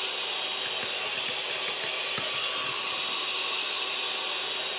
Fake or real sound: real